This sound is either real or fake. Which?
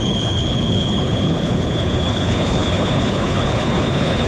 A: fake